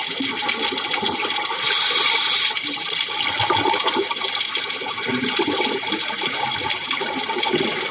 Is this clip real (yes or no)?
yes